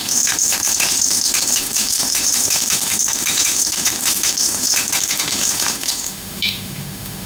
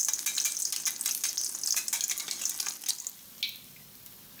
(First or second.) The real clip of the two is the second